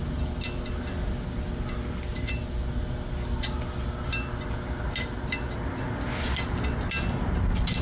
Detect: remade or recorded recorded